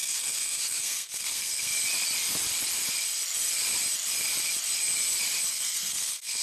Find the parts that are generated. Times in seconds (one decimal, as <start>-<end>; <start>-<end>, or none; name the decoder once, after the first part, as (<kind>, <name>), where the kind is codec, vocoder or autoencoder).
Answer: 0.0-1.7 (codec, SNAC); 5.5-6.4